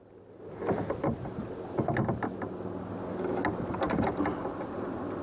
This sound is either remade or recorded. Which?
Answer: recorded